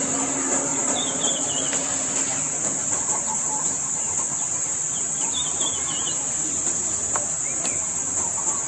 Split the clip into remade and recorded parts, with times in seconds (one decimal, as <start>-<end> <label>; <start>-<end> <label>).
0.0-0.7 recorded; 0.7-1.5 remade; 1.5-8.7 recorded